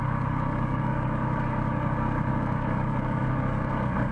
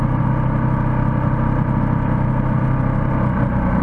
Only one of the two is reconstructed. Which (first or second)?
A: first